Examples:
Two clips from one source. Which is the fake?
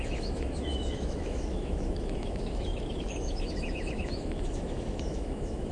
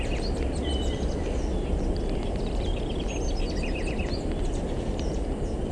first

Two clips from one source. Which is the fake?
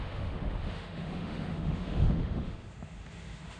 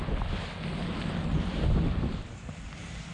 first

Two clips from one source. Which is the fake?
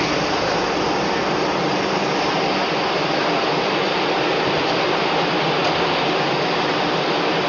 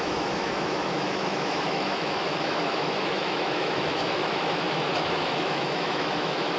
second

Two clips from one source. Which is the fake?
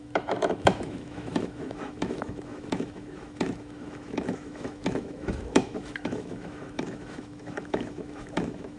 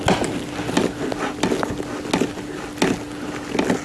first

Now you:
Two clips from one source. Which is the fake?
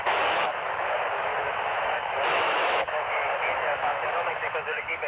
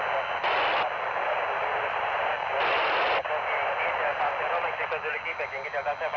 first